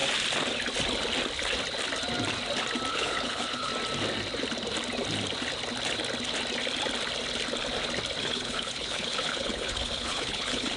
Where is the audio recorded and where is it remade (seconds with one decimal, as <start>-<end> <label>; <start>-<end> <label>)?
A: 0.0-2.9 recorded; 2.9-3.7 remade; 3.7-8.2 recorded; 8.2-10.8 remade